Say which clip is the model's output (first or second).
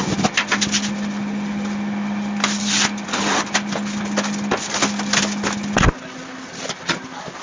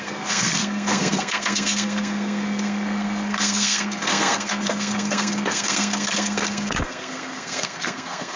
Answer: second